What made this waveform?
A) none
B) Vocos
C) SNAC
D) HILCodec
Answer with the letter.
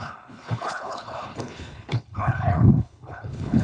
D